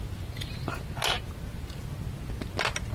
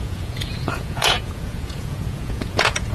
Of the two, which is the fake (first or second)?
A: second